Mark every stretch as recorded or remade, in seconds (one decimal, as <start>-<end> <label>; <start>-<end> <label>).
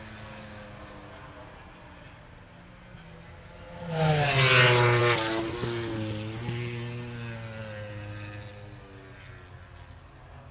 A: 0.0-10.5 recorded